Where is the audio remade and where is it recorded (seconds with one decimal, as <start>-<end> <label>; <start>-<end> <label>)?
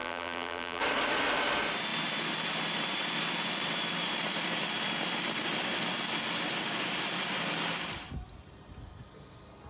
0.0-0.8 remade; 0.8-9.7 recorded